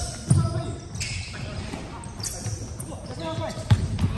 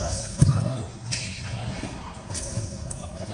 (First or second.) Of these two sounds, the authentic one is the first